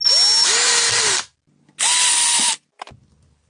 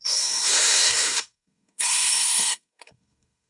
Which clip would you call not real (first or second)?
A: second